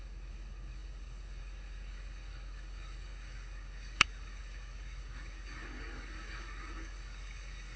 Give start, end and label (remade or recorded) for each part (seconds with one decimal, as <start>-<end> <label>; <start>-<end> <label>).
0.0-7.8 remade